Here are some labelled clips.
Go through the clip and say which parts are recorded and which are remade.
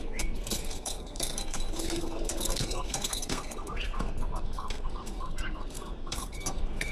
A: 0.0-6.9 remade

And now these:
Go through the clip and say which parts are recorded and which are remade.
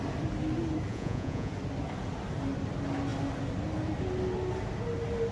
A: 0.0-0.9 recorded; 0.9-1.5 remade; 1.5-5.3 recorded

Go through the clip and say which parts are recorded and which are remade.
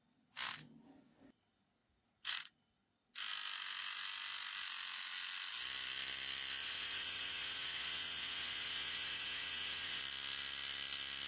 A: 0.0-1.8 recorded; 1.8-2.5 remade; 2.5-6.6 recorded; 6.6-10.0 remade; 10.0-11.3 recorded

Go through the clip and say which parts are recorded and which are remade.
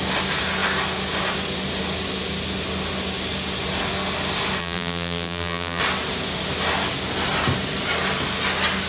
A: 0.0-4.6 recorded; 4.6-5.8 remade; 5.8-8.9 recorded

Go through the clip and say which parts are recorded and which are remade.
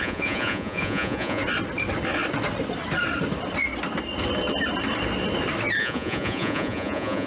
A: 0.0-1.4 remade; 1.4-5.8 recorded; 5.8-7.3 remade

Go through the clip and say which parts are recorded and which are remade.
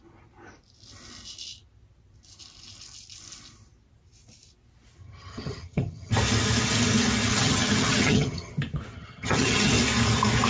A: 0.0-5.0 recorded; 5.0-6.1 remade; 6.1-7.3 recorded; 7.3-8.5 remade; 8.5-8.9 recorded; 8.9-9.7 remade; 9.7-10.5 recorded